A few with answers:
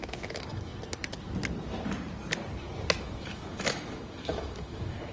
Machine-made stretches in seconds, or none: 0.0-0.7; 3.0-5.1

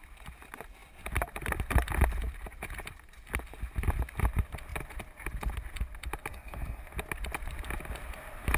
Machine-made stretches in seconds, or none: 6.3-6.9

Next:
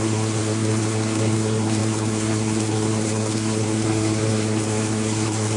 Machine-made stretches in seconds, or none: 0.0-5.6

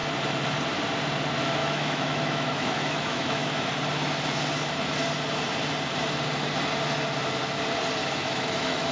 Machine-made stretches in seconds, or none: 1.6-3.7; 8.0-8.9

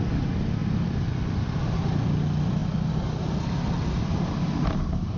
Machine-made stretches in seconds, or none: none

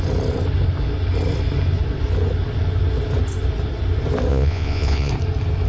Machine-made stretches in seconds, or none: 4.3-5.1

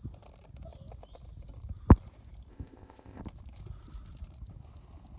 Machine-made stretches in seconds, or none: 2.5-3.2